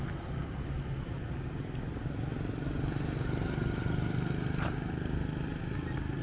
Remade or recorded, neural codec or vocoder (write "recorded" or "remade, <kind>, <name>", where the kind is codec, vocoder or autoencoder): recorded